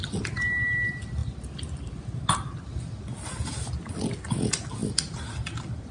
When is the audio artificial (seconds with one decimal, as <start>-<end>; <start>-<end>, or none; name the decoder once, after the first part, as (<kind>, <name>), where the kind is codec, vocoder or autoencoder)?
none